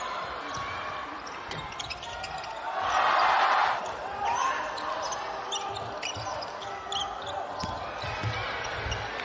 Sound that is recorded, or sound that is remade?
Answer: recorded